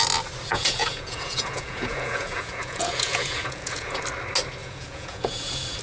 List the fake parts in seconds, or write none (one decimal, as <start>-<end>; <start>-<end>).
0.5-4.0; 4.6-5.8